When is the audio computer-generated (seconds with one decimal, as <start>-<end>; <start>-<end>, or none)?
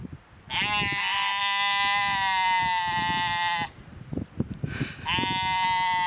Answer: none